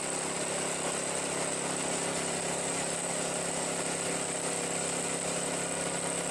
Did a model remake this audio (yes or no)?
no